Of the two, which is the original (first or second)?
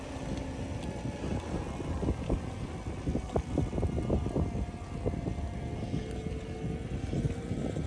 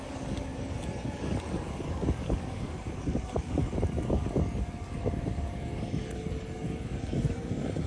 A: first